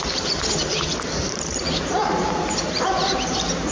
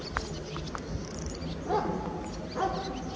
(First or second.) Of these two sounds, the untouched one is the second